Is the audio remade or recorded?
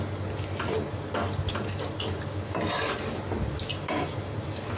recorded